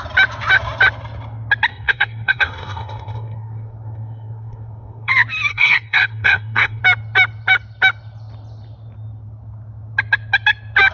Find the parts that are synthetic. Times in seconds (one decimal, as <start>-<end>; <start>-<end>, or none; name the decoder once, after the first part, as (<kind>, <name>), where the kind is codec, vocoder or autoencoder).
1.7-5.1 (codec, SNAC); 5.5-6.8

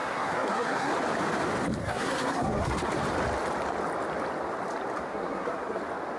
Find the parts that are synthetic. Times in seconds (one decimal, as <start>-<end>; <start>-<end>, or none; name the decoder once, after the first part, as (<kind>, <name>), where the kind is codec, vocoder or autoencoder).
0.0-0.9 (codec, SNAC); 1.8-2.9; 5.1-5.8